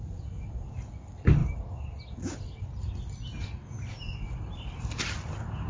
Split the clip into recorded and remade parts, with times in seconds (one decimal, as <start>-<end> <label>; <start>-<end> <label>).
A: 0.0-5.7 recorded